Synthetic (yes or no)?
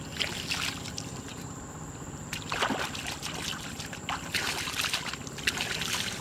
no